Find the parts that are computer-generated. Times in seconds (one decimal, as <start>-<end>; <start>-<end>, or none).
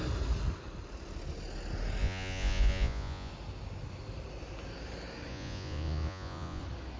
2.0-3.3; 5.3-6.6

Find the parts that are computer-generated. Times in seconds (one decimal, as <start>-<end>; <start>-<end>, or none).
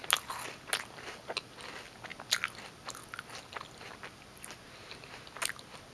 none